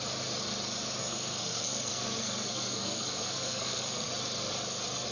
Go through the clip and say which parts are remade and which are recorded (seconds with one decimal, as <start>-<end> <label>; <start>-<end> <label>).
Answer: 0.0-1.0 recorded; 1.0-4.1 remade; 4.1-5.1 recorded